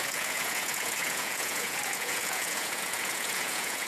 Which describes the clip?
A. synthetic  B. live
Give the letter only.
A